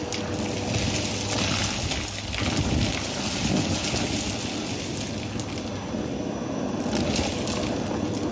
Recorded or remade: recorded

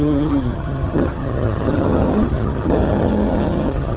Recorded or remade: remade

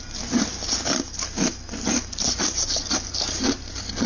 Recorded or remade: recorded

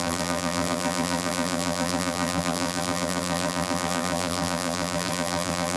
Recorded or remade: remade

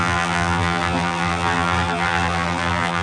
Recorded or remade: remade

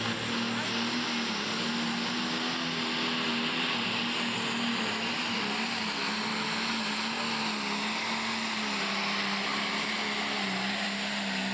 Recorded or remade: recorded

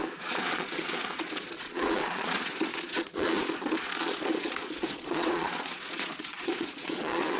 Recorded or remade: remade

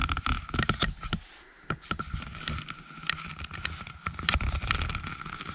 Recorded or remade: recorded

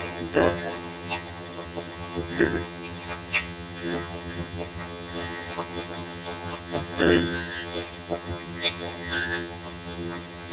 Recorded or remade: remade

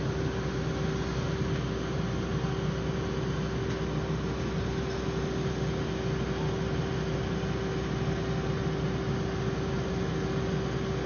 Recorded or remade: recorded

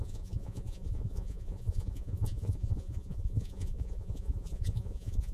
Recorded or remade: remade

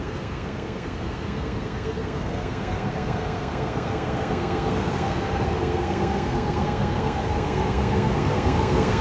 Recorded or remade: remade